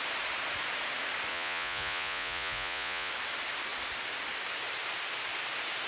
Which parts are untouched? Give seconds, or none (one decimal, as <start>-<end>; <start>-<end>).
0.0-1.3; 3.1-5.9